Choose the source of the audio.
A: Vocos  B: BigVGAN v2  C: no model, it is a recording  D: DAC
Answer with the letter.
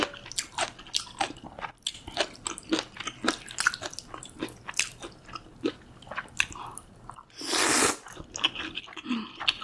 C